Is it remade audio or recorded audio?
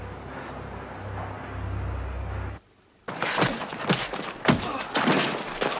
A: recorded